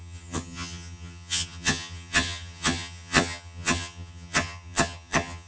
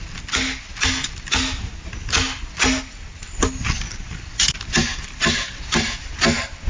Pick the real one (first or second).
second